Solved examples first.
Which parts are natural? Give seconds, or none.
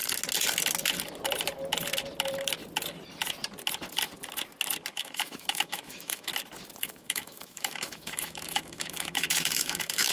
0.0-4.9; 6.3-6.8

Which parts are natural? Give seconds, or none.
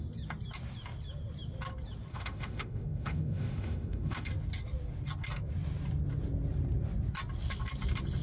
0.0-2.1; 4.3-8.2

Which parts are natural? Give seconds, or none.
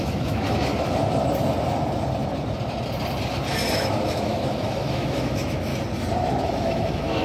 0.7-3.7; 5.7-6.3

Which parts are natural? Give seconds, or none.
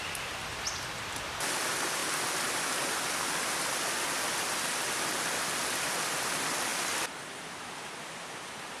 0.0-8.8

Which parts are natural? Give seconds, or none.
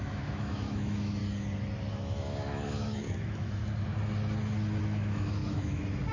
1.2-1.9; 3.6-4.8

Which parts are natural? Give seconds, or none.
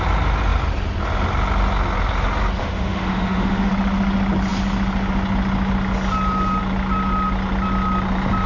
0.0-2.6; 3.7-8.5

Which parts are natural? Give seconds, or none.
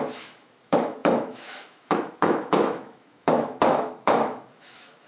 none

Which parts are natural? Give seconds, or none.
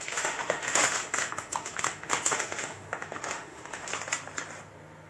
3.9-5.1